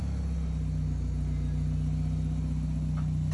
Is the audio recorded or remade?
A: recorded